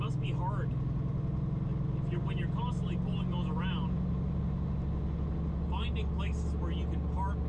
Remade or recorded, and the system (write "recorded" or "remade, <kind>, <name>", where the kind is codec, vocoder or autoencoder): recorded